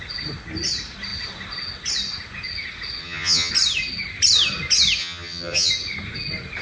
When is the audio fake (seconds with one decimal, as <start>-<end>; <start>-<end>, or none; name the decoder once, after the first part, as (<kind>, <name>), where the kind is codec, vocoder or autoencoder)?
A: 3.0-3.5 (vocoder, HiFi-GAN); 5.0-5.7